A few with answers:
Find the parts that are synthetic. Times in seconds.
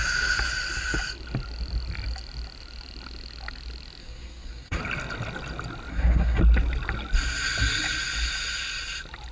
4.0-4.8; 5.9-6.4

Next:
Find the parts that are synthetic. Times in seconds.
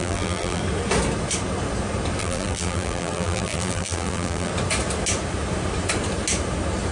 0.0-0.6; 2.2-4.5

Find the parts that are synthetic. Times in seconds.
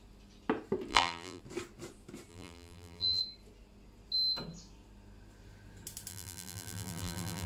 0.9-1.4; 2.3-3.2; 6.1-7.5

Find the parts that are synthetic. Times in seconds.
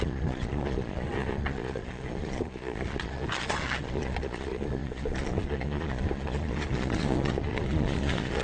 0.0-8.4